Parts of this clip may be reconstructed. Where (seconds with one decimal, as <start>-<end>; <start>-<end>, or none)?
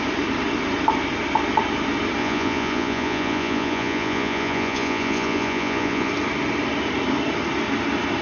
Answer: 2.2-6.1